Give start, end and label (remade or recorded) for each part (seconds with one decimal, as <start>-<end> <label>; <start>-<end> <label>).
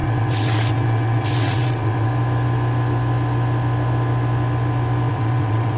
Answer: 0.0-2.1 remade; 2.1-5.1 recorded; 5.1-5.8 remade